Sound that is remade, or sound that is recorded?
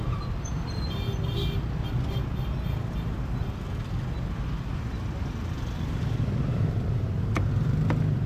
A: recorded